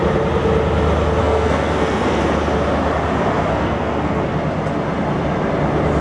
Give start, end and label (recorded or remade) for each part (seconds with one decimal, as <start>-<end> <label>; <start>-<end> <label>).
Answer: 0.0-1.2 recorded; 1.2-2.2 remade; 2.2-3.5 recorded; 3.5-4.2 remade; 4.2-6.0 recorded